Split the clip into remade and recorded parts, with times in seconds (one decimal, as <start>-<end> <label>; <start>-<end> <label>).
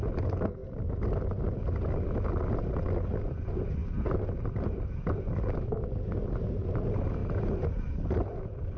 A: 0.0-8.8 recorded